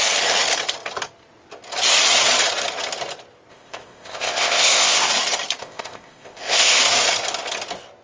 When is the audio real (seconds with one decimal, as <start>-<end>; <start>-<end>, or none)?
0.0-3.5; 5.1-5.6; 6.8-8.0